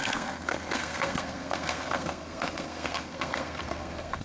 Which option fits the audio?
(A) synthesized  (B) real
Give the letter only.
A